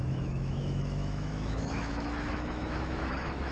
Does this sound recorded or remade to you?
remade